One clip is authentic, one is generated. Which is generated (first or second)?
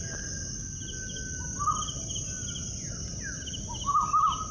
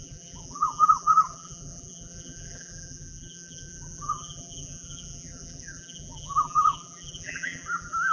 second